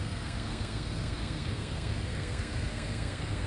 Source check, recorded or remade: remade